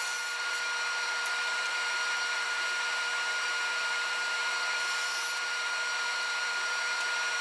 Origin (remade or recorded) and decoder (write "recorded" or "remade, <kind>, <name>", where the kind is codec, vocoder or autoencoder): remade, vocoder, BigVGAN v2